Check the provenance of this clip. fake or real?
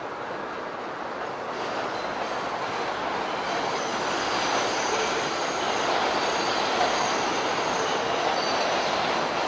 real